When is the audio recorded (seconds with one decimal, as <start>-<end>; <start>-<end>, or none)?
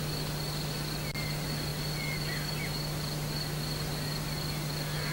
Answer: 0.0-5.1